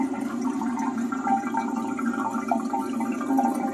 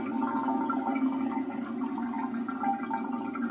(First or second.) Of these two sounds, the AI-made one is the first